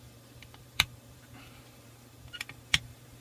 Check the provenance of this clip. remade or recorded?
remade